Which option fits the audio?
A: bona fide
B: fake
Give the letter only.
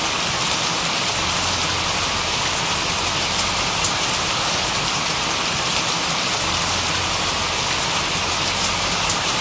A